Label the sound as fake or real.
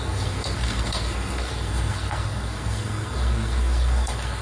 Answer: fake